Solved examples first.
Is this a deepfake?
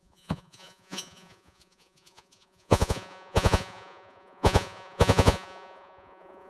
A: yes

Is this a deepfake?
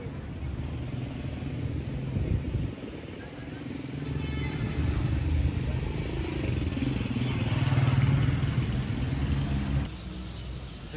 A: no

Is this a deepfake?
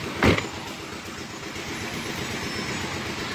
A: no